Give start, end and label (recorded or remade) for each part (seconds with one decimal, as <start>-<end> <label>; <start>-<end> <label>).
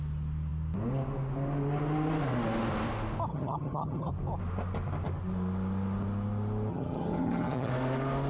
0.0-3.3 recorded; 3.3-4.1 remade; 4.1-6.7 recorded; 6.7-7.7 remade; 7.7-8.3 recorded